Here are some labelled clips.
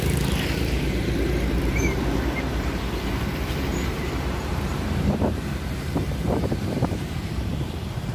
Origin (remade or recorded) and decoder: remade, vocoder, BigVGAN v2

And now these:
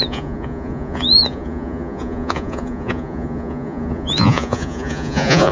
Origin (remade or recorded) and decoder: remade, vocoder, Vocos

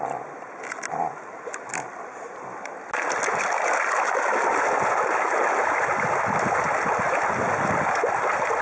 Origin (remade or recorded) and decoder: recorded